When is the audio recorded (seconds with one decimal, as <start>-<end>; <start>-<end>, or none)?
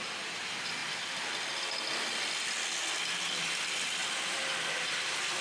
0.0-5.4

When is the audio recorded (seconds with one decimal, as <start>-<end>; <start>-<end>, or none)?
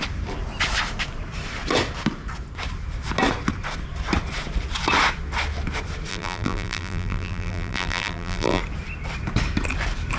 0.0-6.1; 8.6-10.2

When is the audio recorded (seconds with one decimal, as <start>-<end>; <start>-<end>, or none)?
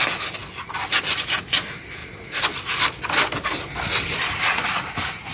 0.0-5.3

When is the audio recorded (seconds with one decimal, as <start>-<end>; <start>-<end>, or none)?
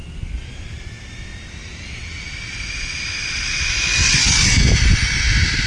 0.0-1.6; 4.8-5.7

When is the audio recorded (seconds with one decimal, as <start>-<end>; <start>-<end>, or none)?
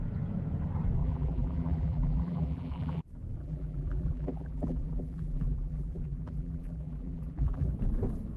0.0-1.0; 3.0-3.4; 7.7-8.4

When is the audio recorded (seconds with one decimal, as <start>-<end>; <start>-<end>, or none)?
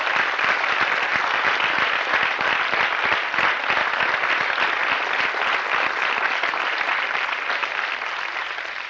1.1-5.4